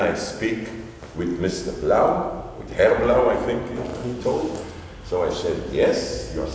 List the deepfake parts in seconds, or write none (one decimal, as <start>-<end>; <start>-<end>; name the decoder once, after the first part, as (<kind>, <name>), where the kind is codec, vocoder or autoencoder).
none